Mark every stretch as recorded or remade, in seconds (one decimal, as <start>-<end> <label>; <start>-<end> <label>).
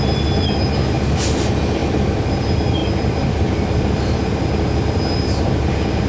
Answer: 0.0-2.8 recorded; 2.8-6.1 remade